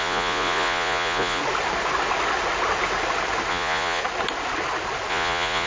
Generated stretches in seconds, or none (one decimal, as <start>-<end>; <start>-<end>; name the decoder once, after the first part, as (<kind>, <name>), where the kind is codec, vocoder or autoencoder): 0.0-1.4 (vocoder, Vocos); 3.5-4.0; 5.1-5.7